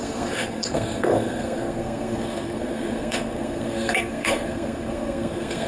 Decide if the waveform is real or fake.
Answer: fake